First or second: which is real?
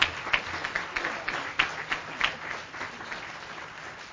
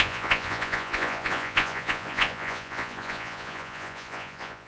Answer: first